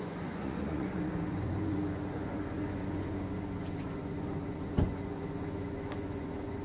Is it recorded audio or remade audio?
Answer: remade